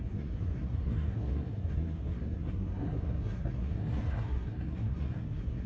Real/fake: fake